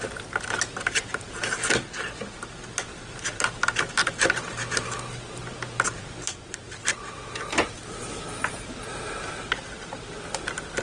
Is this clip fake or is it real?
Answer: real